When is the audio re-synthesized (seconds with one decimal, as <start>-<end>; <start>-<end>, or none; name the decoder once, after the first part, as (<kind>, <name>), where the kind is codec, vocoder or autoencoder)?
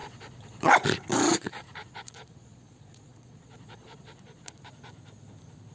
0.0-0.7 (vocoder, Vocos); 1.3-4.7